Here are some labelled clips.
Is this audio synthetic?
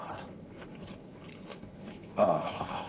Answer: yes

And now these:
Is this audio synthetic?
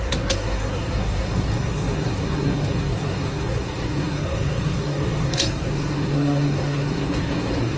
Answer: yes